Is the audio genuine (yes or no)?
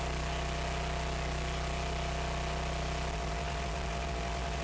yes